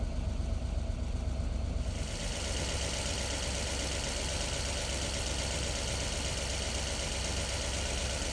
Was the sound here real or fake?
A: real